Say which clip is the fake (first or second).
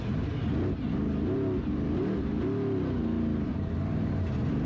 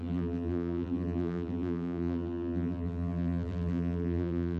second